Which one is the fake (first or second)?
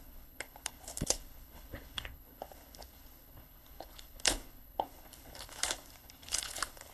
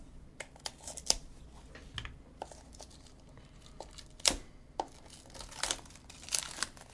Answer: first